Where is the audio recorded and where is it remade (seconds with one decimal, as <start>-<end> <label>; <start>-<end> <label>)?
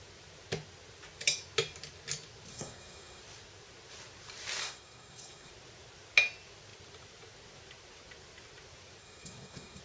0.0-2.5 recorded; 2.5-3.2 remade; 3.2-4.6 recorded; 4.6-5.5 remade; 5.5-9.0 recorded; 9.0-9.8 remade